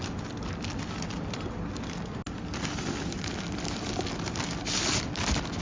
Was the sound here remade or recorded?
recorded